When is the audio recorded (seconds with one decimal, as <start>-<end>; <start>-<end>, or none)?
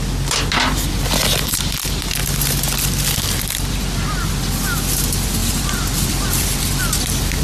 0.0-5.4; 6.8-7.4